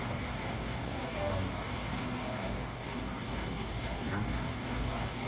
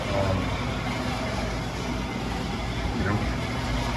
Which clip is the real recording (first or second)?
second